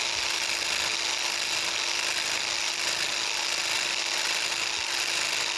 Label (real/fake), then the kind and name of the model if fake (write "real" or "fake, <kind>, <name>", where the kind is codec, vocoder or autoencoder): real